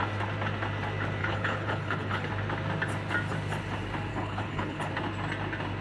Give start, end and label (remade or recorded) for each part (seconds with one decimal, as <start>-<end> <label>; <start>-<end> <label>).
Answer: 0.0-1.2 recorded; 1.2-2.3 remade; 2.3-4.1 recorded; 4.1-4.9 remade; 4.9-5.8 recorded